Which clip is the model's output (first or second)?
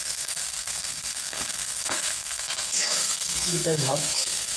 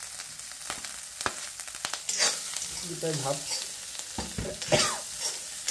first